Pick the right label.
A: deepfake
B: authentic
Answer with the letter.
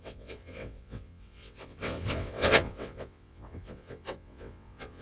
A